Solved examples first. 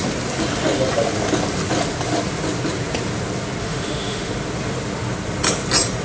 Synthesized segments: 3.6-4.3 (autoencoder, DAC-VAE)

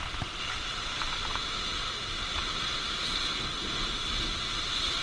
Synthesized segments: none

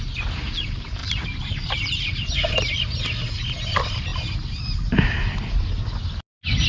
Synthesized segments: none

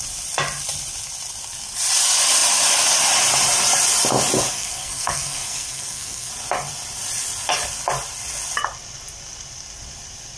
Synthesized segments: 4.5-6.3 (codec, SNAC)